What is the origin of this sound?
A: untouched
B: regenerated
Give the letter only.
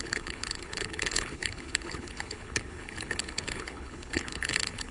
B